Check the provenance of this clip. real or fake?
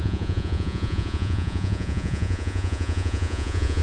fake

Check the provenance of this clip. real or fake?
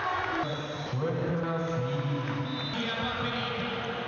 real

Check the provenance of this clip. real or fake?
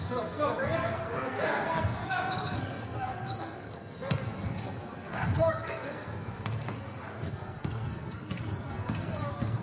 fake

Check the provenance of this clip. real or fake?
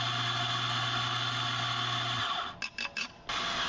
real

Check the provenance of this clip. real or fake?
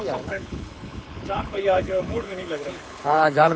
fake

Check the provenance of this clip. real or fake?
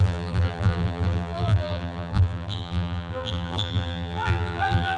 fake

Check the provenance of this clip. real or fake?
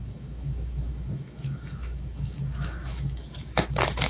fake